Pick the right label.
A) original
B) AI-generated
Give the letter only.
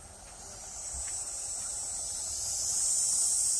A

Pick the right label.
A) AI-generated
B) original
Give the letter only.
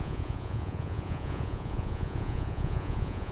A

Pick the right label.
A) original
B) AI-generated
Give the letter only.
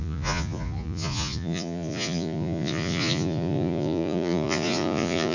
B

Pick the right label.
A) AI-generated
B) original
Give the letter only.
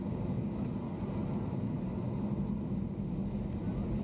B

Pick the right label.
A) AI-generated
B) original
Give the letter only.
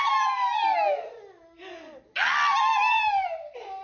B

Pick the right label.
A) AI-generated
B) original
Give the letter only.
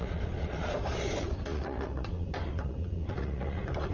A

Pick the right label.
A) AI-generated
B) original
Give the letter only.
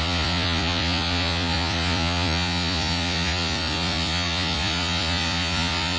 A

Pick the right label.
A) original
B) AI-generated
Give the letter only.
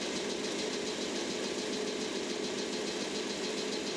A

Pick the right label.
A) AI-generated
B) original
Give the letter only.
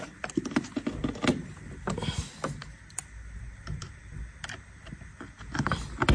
B